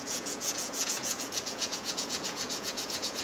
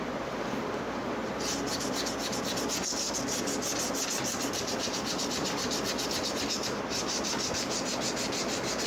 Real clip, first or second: second